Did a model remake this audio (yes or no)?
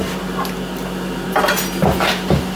no